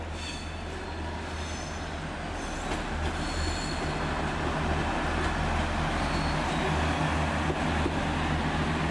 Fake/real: real